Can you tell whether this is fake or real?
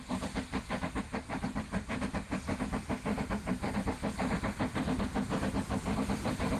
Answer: real